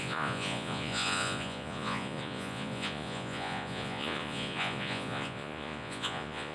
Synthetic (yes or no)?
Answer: yes